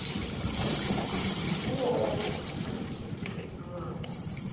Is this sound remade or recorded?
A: remade